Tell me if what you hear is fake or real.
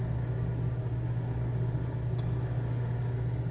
real